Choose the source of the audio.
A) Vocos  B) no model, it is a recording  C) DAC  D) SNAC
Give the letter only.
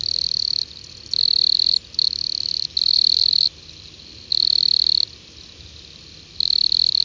B